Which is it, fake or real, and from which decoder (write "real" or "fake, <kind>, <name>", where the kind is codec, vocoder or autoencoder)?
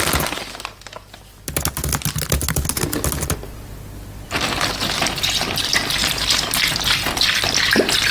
real